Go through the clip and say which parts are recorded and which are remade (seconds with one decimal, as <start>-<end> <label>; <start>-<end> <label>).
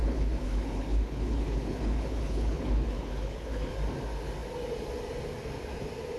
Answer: 0.0-3.7 remade; 3.7-6.2 recorded